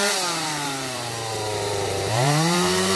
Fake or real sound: fake